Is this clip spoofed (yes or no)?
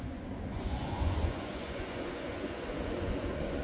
yes